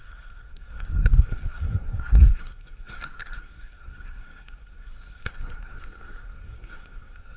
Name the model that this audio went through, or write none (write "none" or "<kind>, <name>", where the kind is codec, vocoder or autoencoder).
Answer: codec, SNAC